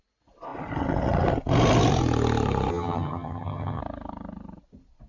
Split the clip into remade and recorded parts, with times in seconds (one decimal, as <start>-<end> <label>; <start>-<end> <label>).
0.0-2.7 recorded; 2.7-3.8 remade; 3.8-5.1 recorded